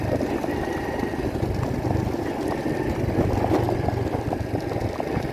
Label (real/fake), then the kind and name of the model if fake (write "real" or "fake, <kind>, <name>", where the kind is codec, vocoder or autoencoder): real